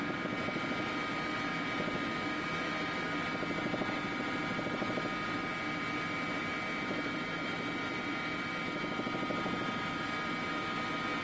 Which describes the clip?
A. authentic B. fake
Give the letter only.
A